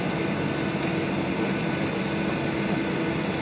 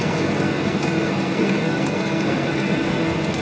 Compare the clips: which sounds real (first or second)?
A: first